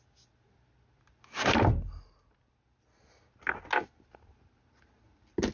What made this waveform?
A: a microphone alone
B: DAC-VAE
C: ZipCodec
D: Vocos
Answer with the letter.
A